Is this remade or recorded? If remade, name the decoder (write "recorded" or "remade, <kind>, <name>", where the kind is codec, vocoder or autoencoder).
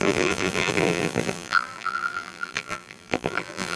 remade, vocoder, BigVGAN v2